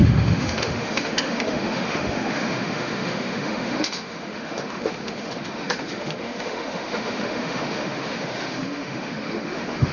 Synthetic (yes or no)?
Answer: yes